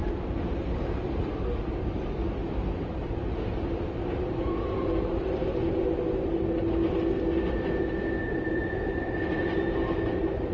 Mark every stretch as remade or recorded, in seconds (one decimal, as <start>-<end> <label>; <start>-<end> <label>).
0.0-10.5 recorded

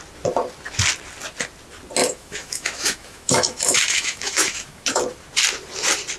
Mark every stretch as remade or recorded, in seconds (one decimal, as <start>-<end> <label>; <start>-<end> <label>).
0.0-2.0 recorded; 2.0-5.0 remade; 5.0-6.2 recorded

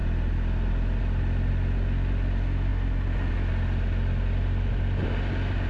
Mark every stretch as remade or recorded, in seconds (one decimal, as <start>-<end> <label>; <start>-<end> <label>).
0.0-5.7 recorded

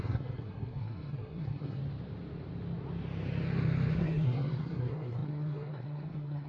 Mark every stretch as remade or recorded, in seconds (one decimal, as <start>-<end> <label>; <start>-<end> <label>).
0.0-1.8 remade; 1.8-3.9 recorded; 3.9-6.5 remade

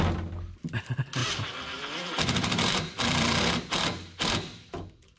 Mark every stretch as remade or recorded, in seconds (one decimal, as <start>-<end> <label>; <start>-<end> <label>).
0.0-1.2 recorded; 1.2-3.4 remade; 3.4-5.2 recorded

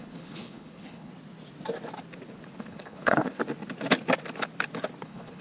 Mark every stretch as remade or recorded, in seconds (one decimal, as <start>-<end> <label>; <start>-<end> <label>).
0.0-1.1 remade; 1.1-2.6 recorded; 2.6-3.4 remade; 3.4-5.0 recorded; 5.0-5.4 remade